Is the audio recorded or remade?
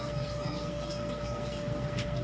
remade